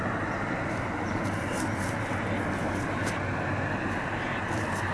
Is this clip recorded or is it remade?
recorded